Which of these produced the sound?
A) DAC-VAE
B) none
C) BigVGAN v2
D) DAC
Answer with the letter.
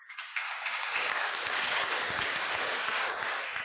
D